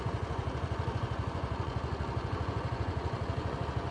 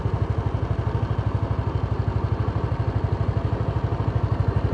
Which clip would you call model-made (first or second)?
first